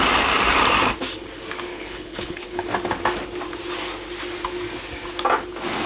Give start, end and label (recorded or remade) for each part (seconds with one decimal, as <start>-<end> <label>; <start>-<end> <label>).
0.0-1.7 recorded; 1.7-2.6 remade; 2.6-5.9 recorded